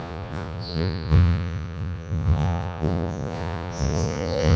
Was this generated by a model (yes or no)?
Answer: yes